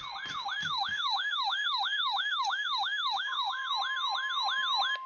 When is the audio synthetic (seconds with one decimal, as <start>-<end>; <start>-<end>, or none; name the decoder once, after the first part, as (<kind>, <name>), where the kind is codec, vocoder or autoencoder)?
0.6-3.7 (autoencoder, DAC-VAE)